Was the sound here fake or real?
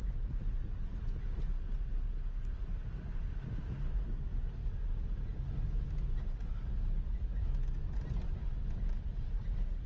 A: real